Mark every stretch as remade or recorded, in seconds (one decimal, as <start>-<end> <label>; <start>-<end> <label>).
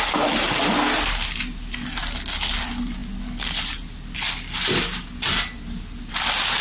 0.0-6.6 recorded